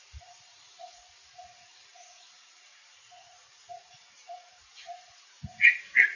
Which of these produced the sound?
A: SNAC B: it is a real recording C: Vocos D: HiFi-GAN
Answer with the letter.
C